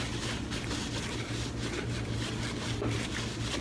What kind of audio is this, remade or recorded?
recorded